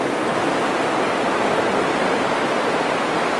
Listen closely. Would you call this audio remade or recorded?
recorded